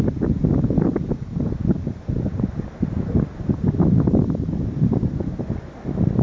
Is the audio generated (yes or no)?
no